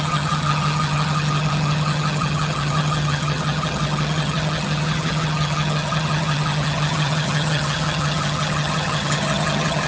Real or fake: fake